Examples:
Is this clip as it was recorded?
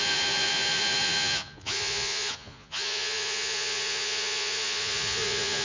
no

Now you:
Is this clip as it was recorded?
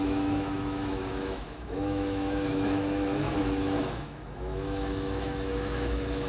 no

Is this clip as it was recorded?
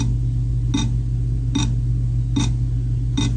yes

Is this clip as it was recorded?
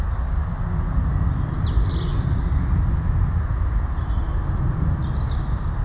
yes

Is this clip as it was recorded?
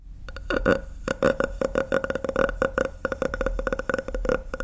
no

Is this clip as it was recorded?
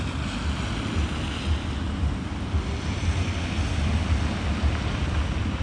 yes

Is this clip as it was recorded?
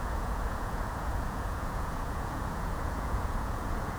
no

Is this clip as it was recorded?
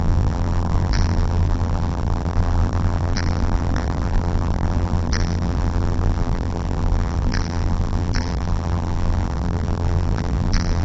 no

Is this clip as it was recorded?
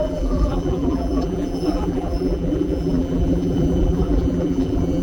no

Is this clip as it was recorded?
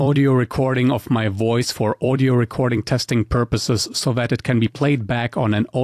no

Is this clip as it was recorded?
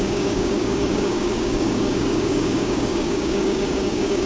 no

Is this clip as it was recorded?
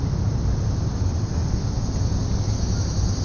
yes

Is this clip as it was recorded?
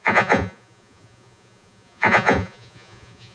no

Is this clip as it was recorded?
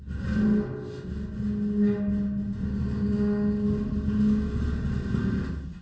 yes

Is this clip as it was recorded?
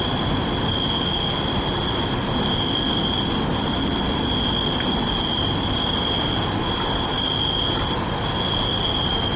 yes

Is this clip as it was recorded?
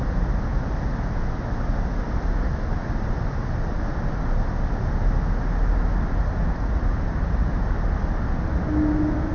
yes